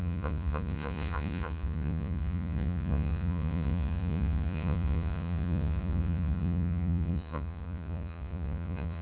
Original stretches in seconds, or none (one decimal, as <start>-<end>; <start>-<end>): none